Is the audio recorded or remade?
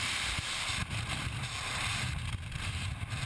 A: remade